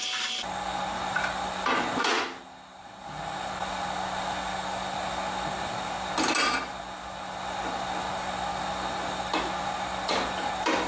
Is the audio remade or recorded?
recorded